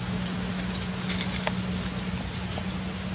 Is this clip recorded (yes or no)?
yes